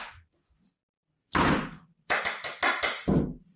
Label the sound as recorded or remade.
recorded